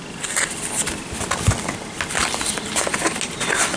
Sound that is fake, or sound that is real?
real